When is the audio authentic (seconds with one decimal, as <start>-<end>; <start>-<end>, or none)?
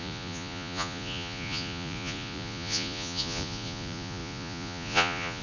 none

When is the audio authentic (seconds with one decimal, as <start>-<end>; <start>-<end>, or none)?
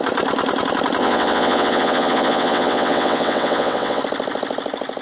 0.0-1.0; 4.0-5.0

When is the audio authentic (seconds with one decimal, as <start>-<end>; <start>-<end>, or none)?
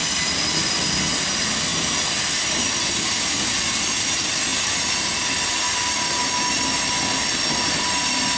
0.0-8.4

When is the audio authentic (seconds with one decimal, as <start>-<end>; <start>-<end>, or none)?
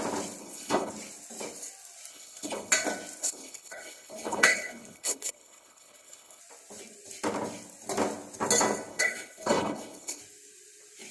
0.0-0.4; 0.9-2.1; 2.7-3.2; 6.4-8.9; 10.2-11.1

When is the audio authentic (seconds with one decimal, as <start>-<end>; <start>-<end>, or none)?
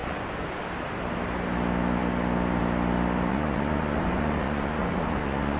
0.6-3.3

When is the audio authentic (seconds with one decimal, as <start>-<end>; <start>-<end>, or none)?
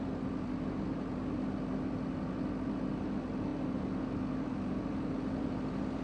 0.0-6.0